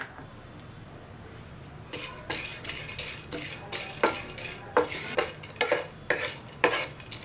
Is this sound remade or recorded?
recorded